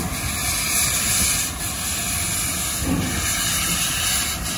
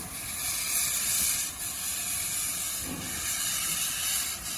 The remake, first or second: second